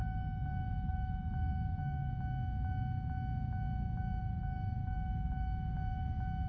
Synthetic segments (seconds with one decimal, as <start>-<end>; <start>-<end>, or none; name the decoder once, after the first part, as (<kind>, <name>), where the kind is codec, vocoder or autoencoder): 0.0-2.1 (codec, DAC); 4.2-6.0